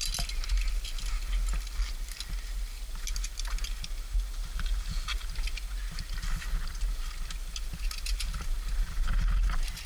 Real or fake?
real